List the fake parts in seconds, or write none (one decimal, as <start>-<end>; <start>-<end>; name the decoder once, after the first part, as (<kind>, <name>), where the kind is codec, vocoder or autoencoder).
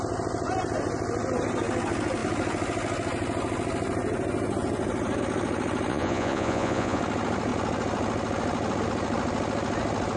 5.9-7.0 (vocoder, Vocos)